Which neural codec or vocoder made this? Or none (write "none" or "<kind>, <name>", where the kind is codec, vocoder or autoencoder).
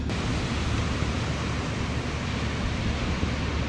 none